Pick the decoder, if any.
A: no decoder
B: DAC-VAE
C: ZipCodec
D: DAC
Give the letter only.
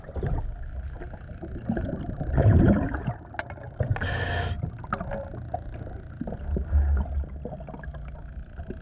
A